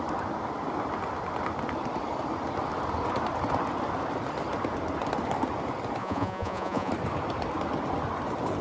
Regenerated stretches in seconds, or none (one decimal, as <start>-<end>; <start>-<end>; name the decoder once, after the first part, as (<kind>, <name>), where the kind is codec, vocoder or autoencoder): 6.0-6.9 (vocoder, Vocos)